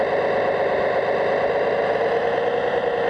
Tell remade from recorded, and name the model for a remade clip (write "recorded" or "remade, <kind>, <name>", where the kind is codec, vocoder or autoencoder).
recorded